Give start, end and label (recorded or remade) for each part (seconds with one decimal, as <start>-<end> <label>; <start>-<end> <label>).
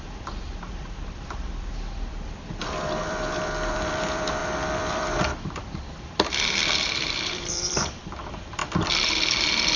0.0-9.8 remade